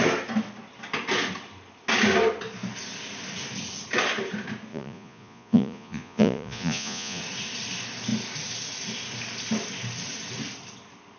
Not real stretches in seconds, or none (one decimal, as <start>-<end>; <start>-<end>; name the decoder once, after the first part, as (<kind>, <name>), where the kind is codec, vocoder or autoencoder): 4.7-7.2 (vocoder, Vocos)